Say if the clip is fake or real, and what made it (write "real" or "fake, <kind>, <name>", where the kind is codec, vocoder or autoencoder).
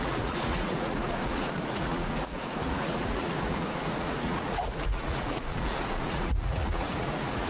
fake, vocoder, Vocos